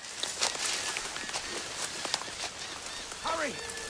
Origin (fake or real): real